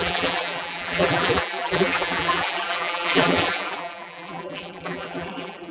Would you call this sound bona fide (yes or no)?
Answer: no